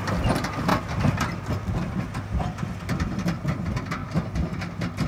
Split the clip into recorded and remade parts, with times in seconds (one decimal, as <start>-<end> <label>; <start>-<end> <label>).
0.0-5.1 recorded